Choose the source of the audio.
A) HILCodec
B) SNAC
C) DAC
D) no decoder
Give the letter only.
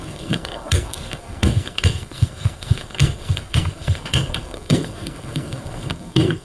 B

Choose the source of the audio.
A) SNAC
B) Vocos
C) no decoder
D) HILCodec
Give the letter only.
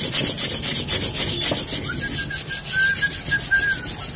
C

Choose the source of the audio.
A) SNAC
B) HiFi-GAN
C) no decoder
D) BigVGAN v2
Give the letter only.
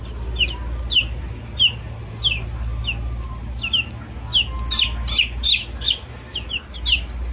C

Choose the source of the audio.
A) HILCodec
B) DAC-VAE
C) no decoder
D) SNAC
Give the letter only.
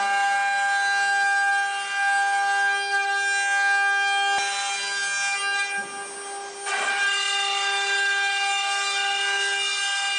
C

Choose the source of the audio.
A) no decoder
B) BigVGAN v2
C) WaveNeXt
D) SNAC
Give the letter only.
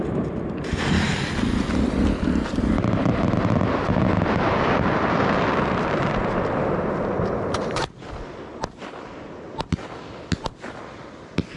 A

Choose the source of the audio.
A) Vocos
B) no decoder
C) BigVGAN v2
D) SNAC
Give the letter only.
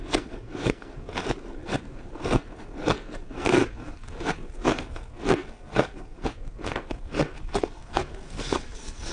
D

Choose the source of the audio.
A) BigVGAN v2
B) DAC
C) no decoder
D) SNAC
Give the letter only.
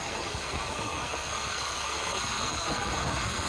D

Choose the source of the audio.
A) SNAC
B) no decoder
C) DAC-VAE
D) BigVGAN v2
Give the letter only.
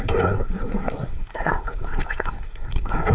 A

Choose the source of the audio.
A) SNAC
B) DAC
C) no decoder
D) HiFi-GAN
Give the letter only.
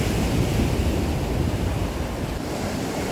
C